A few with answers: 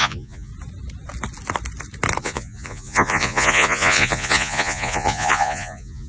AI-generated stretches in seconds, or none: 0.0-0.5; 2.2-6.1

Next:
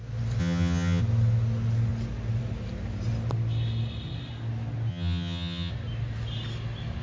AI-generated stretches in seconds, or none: 0.4-1.0; 4.9-5.7

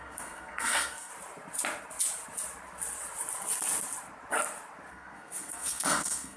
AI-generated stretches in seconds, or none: 0.0-1.1; 4.9-6.4

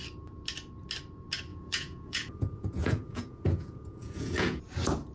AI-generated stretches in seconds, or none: 1.5-4.6

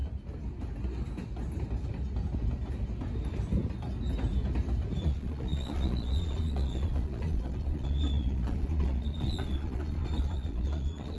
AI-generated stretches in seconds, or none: 5.0-11.2

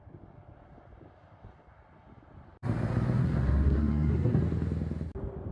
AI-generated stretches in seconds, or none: 3.2-4.4

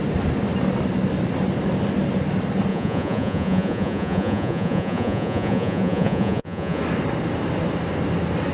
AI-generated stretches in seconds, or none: 2.7-6.8

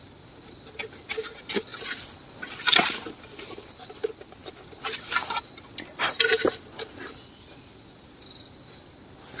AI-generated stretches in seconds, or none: none